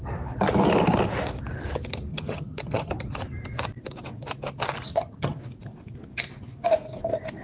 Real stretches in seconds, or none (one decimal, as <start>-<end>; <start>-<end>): 0.0-2.1; 2.9-4.9; 5.4-7.4